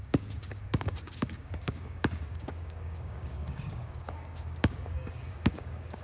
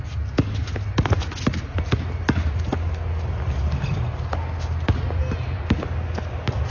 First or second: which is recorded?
second